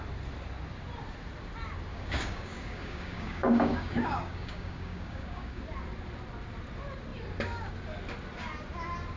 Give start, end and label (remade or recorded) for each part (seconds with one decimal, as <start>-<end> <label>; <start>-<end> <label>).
0.0-1.9 recorded; 1.9-5.6 remade; 5.6-9.2 recorded